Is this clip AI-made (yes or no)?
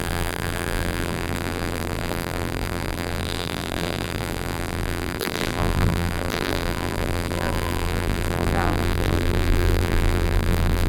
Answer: yes